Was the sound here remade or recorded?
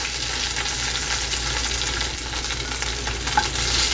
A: recorded